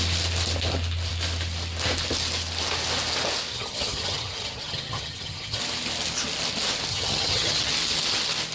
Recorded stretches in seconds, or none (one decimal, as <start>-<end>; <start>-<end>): 0.0-3.5; 5.6-6.9; 7.7-8.5